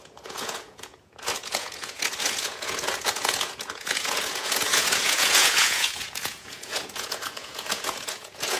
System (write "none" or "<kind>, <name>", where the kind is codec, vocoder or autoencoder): vocoder, Vocos